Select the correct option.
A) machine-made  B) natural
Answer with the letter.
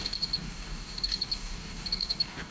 A